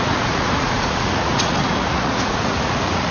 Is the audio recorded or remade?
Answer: remade